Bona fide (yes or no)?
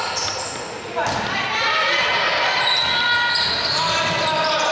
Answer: yes